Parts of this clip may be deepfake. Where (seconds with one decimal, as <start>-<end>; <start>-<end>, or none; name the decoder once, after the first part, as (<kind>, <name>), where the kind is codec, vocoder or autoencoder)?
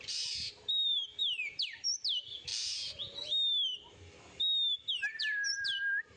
0.0-2.5 (vocoder, BigVGAN v2); 4.9-6.2